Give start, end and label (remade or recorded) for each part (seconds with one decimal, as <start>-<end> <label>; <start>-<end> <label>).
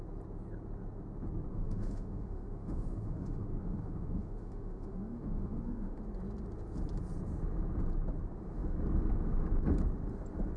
0.0-1.5 recorded; 1.5-6.0 remade; 6.0-10.6 recorded